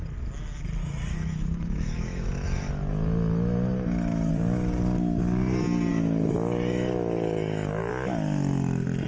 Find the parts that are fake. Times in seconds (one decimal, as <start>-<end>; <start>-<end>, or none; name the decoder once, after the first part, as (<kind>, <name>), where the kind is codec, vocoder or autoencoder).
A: 0.8-4.3 (autoencoder, DAC-VAE); 5.9-7.9